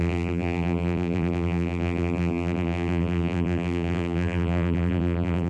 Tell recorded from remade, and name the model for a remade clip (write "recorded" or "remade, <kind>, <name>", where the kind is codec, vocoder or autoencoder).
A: remade, vocoder, BigVGAN v2